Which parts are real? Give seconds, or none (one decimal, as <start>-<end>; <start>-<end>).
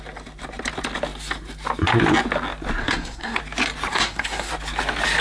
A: 0.0-2.8; 3.4-3.9; 4.5-5.2